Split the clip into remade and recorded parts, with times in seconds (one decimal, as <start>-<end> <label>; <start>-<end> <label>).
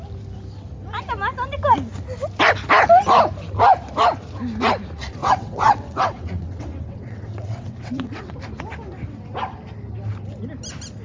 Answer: 0.0-5.2 recorded; 5.2-8.3 remade; 8.3-11.0 recorded